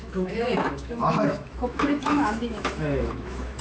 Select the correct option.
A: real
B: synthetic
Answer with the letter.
B